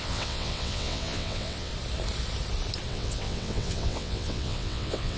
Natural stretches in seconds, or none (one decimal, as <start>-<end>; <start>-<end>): 1.7-2.9